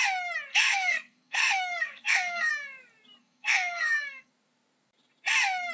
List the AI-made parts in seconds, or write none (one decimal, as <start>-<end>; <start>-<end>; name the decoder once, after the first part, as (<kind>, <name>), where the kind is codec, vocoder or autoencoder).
0.5-2.5 (codec, SNAC); 3.2-4.3